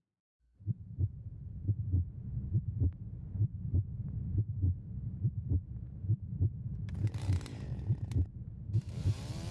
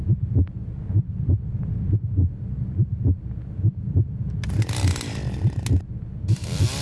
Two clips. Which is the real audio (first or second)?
second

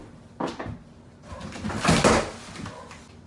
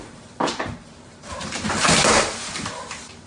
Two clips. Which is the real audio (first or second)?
first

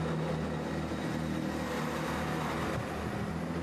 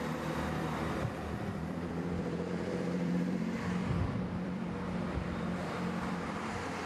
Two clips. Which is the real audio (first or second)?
first